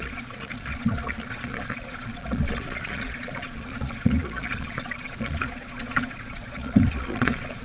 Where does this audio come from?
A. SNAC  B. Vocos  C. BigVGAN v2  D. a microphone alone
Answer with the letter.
B